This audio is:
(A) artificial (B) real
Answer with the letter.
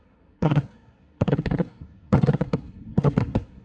A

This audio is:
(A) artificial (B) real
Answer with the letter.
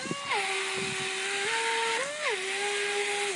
B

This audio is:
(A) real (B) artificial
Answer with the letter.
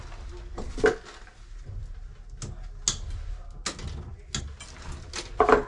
A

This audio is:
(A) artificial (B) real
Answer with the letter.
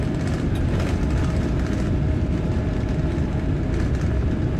B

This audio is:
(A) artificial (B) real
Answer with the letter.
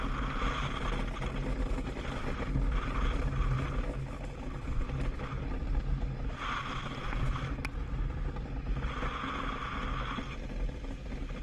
B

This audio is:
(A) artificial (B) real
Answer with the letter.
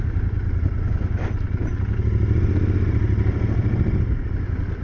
B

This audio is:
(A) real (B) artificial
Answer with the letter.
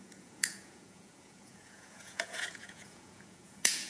B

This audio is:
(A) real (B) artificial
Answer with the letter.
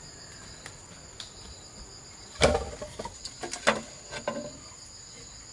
A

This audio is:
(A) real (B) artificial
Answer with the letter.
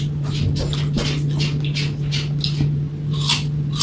A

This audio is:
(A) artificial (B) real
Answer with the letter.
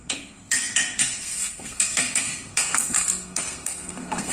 A